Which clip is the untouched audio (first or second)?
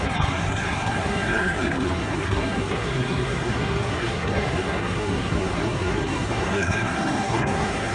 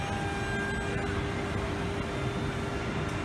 second